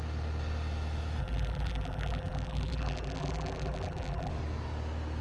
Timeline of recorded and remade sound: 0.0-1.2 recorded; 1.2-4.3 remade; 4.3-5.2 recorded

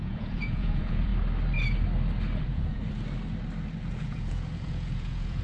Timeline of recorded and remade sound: 0.0-1.1 remade; 1.1-2.4 recorded; 2.4-2.8 remade; 2.8-3.9 recorded; 3.9-5.4 remade

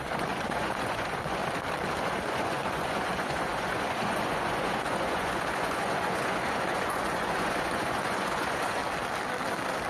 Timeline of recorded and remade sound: 0.0-1.4 remade; 1.4-2.0 recorded; 2.0-8.8 remade; 8.8-9.9 recorded

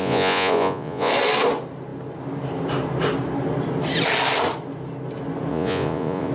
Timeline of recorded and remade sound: 0.0-1.1 remade; 1.1-5.5 recorded; 5.5-6.3 remade

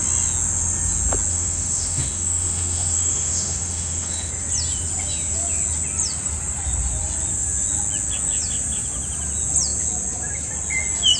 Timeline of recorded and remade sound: 0.0-1.3 recorded; 1.3-4.3 remade; 4.3-11.2 recorded

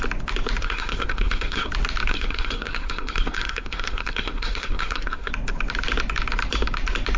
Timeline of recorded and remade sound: 0.0-0.6 recorded; 0.6-1.7 remade; 1.7-2.1 recorded; 2.1-5.3 remade; 5.3-7.2 recorded

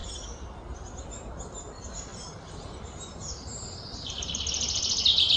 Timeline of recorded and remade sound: 0.0-2.1 recorded; 2.1-5.4 remade